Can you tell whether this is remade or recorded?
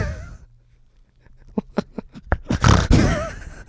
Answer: recorded